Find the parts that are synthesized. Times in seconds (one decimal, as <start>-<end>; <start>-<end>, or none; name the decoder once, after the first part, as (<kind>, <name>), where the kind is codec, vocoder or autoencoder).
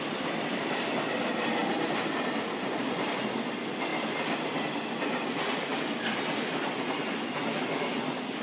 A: none